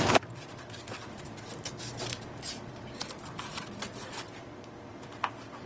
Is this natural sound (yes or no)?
yes